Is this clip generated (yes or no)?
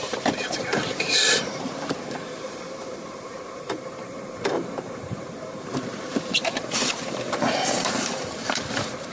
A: yes